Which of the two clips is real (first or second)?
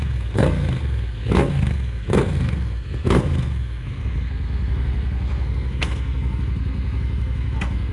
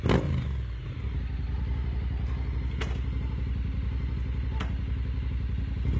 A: second